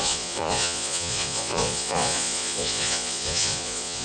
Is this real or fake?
fake